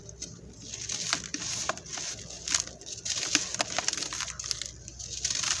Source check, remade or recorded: recorded